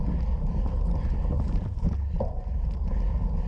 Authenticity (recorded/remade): recorded